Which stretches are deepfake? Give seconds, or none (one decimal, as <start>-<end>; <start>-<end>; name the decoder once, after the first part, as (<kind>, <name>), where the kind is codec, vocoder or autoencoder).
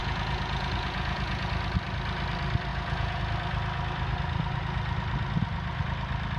0.0-1.5 (vocoder, Vocos); 2.7-3.2